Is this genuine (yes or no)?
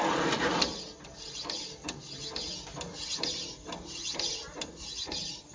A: yes